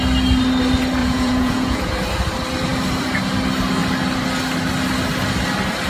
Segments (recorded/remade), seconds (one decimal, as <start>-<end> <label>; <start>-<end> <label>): 0.0-1.0 recorded; 1.0-1.9 remade; 1.9-5.9 recorded